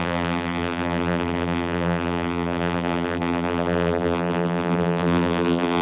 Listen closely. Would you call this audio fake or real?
fake